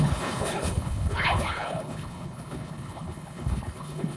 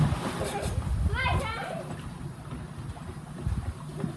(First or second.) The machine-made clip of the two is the first